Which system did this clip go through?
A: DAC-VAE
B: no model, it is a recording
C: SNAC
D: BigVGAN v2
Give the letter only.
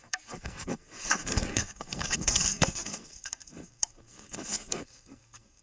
C